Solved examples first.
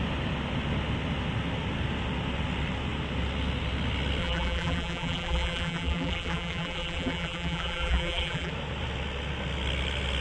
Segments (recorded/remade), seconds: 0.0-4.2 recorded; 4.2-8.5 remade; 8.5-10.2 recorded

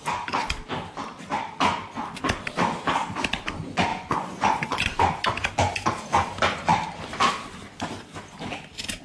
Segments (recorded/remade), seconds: 0.0-3.9 recorded; 3.9-5.0 remade; 5.0-9.0 recorded

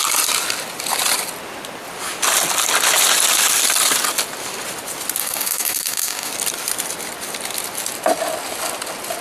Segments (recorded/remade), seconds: 0.0-5.2 recorded; 5.2-6.3 remade; 6.3-9.2 recorded

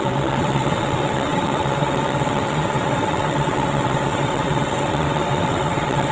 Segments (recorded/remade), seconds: 0.0-6.1 remade

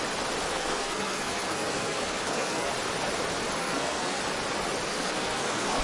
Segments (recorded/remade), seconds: 0.0-0.5 recorded; 0.5-2.7 remade; 2.7-3.6 recorded; 3.6-4.2 remade; 4.2-4.9 recorded; 4.9-5.8 remade

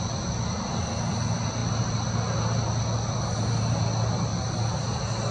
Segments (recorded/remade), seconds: 0.0-5.3 recorded